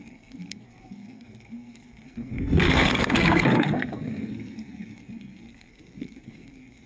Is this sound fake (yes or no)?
yes